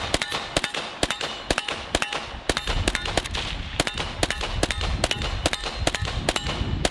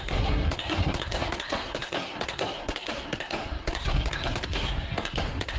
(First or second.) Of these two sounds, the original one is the first